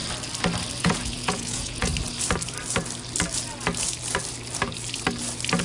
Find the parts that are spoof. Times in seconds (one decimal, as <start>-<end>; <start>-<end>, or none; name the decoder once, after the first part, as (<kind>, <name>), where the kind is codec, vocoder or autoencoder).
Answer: 0.8-1.9 (vocoder, Vocos)